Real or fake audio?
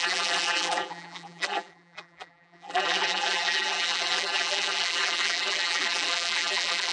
fake